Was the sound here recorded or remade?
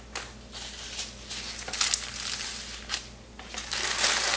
recorded